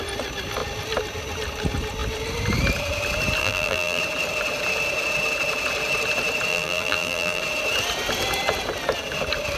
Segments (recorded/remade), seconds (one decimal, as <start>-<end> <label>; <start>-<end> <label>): 0.0-3.4 recorded; 3.4-4.0 remade; 4.0-6.5 recorded; 6.5-7.4 remade; 7.4-9.6 recorded